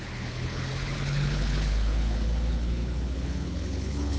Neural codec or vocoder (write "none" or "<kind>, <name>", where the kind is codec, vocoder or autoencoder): codec, HILCodec